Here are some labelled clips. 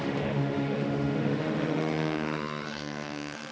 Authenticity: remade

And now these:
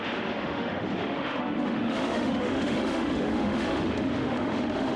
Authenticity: remade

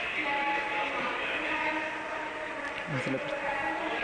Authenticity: recorded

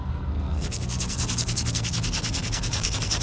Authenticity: remade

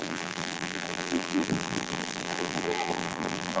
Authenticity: remade